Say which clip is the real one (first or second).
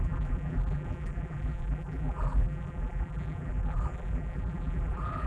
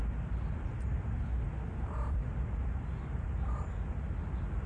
second